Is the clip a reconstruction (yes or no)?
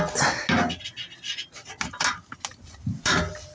no